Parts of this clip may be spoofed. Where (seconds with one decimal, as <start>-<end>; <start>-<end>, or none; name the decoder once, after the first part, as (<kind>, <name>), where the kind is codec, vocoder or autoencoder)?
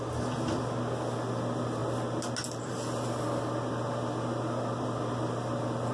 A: none